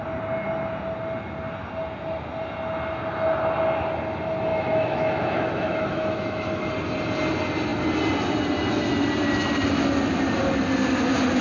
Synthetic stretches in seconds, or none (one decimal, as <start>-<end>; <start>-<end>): 4.5-6.7